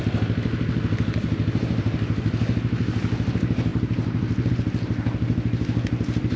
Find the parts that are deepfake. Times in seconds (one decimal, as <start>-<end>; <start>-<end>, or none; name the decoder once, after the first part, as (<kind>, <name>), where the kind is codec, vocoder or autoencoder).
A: none